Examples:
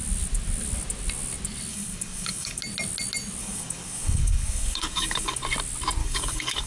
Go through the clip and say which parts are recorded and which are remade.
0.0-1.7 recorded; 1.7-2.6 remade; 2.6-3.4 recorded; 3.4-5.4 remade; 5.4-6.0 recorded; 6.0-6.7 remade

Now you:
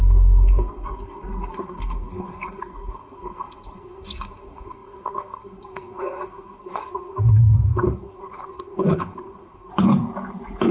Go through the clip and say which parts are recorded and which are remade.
0.0-9.7 remade; 9.7-10.7 recorded